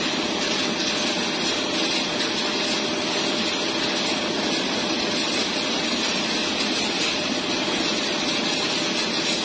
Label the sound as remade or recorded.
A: recorded